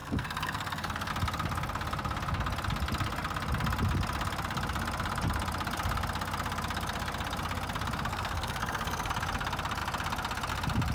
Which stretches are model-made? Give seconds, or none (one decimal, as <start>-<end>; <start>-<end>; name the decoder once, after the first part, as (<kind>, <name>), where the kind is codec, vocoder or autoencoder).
0.0-1.1 (codec, SNAC); 8.1-9.1